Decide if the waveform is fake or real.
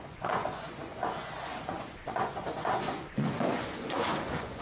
fake